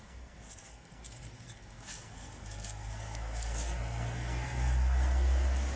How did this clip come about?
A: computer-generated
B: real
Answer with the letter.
A